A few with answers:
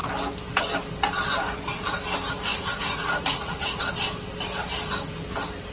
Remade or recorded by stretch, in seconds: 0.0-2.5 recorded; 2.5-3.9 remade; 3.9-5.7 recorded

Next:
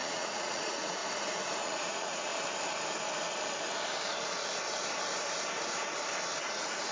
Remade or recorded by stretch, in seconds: 0.0-1.0 remade; 1.0-1.6 recorded; 1.6-2.3 remade; 2.3-6.4 recorded; 6.4-6.9 remade

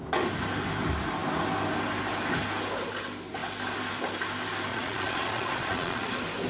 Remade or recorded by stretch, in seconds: 0.0-4.7 recorded; 4.7-6.1 remade; 6.1-6.5 recorded

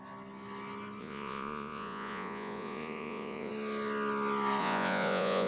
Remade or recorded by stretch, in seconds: 0.0-1.0 recorded; 1.0-3.5 remade; 3.5-4.6 recorded; 4.6-5.5 remade

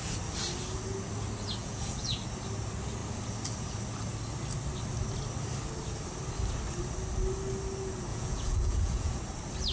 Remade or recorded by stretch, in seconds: 0.0-1.6 recorded; 1.6-2.2 remade; 2.2-8.1 recorded; 8.1-9.2 remade; 9.2-9.7 recorded

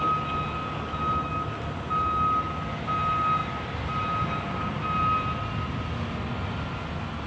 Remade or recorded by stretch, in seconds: 0.0-7.3 recorded